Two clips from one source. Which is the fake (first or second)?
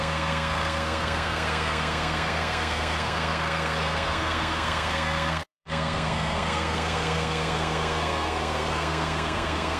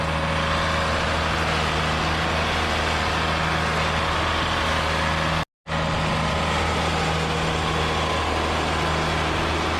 first